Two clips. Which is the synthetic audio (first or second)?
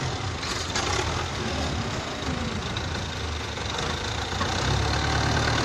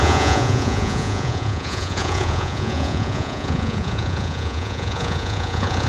second